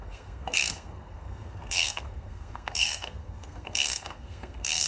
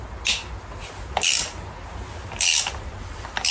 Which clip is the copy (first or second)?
first